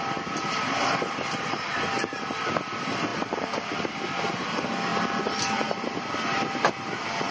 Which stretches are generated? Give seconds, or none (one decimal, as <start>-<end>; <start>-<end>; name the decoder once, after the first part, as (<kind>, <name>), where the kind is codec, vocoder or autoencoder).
none